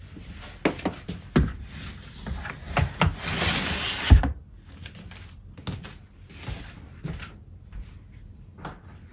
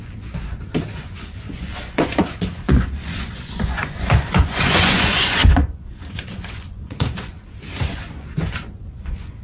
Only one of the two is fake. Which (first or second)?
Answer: second